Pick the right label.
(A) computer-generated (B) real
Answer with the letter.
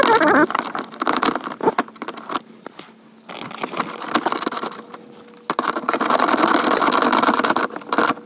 B